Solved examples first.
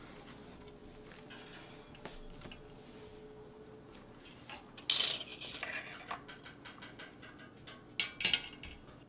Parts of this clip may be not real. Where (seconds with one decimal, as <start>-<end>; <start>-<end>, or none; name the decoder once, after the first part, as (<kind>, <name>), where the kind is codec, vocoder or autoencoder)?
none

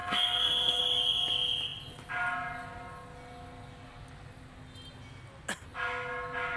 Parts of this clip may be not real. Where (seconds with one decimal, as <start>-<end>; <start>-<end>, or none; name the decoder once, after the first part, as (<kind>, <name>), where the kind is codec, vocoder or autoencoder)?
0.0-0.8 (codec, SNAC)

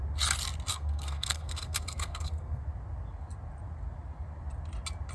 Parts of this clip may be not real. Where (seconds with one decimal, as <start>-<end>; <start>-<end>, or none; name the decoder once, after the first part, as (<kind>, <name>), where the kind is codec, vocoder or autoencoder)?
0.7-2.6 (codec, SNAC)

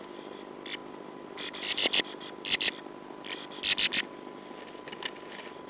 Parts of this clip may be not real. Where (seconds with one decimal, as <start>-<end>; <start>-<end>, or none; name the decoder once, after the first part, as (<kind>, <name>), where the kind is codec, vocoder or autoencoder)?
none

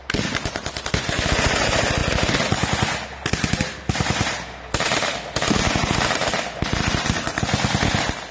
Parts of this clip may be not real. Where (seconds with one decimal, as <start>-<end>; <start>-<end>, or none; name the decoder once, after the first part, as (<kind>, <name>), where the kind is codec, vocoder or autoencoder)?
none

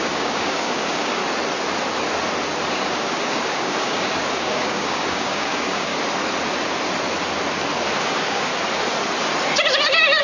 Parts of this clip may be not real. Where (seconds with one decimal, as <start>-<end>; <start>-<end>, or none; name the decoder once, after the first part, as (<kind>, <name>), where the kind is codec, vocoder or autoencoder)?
0.0-1.2 (codec, DAC); 2.7-5.9; 8.0-8.5

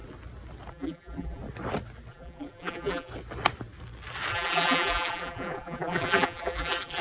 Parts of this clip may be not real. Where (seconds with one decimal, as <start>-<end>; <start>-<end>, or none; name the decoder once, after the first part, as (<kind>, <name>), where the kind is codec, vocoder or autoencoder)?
0.7-1.4 (vocoder, BigVGAN v2); 2.1-3.1; 4.3-7.0

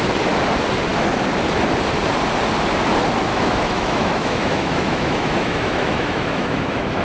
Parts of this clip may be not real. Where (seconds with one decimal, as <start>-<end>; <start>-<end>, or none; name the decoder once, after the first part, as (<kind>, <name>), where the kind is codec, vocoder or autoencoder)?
3.3-7.0 (autoencoder, DAC-VAE)